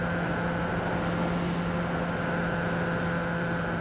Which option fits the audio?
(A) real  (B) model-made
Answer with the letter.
A